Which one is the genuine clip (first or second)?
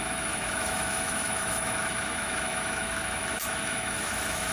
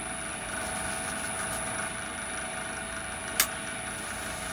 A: second